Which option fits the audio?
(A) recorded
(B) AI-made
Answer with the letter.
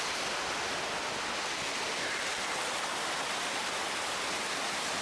A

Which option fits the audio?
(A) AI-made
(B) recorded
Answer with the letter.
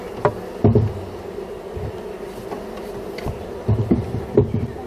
B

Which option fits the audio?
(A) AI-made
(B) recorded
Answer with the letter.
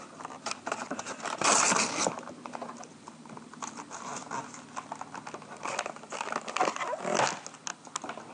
B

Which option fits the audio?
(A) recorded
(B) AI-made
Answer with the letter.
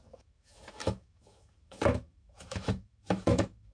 B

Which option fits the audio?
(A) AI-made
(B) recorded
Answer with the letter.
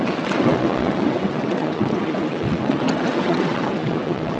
A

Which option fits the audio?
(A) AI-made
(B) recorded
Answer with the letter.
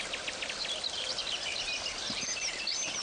B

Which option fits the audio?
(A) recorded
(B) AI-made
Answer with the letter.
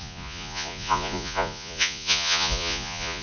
B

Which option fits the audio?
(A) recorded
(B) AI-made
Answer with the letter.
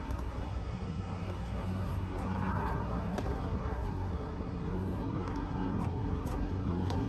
B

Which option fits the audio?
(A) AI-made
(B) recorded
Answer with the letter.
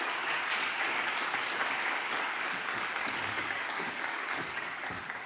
A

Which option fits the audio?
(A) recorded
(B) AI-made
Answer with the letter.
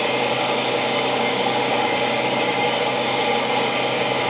B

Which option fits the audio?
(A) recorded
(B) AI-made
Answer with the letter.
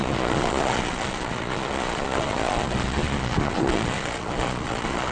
B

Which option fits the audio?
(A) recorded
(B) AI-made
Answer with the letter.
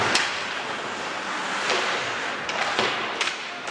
A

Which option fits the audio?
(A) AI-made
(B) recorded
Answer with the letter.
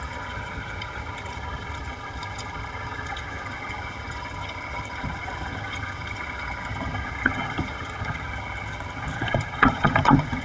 A